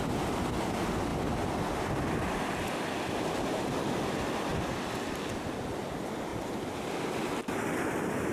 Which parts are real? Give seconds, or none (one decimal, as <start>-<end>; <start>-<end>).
0.0-6.3; 7.0-8.3